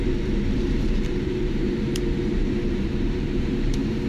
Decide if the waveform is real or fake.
fake